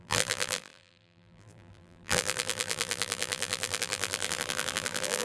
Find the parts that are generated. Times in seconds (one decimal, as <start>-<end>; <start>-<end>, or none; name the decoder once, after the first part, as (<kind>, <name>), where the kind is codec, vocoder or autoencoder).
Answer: 0.0-5.2 (vocoder, BigVGAN v2)